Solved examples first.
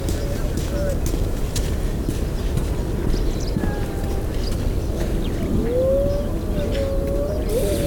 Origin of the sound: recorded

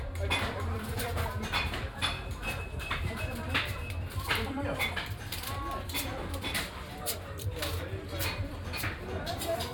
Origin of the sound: remade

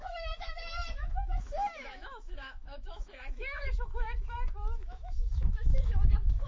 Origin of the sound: remade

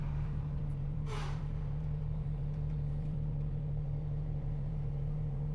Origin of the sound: remade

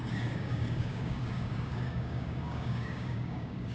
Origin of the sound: remade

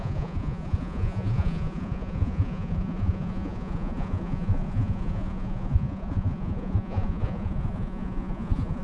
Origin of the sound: remade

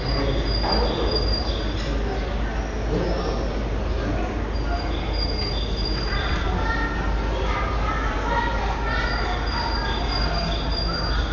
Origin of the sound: recorded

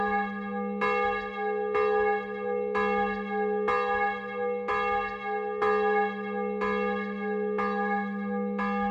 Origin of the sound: recorded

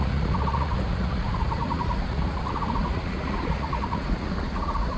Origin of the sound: remade